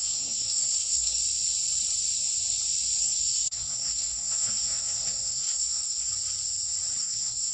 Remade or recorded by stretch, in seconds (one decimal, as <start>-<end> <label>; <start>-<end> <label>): 0.0-1.2 remade; 1.2-3.0 recorded; 3.0-6.1 remade; 6.1-7.0 recorded; 7.0-7.5 remade